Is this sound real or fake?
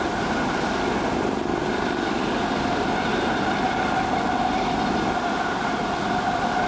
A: real